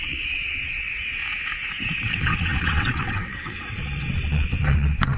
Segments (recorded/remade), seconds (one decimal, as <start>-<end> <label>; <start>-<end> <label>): 0.0-1.2 remade; 1.2-2.1 recorded; 2.1-5.2 remade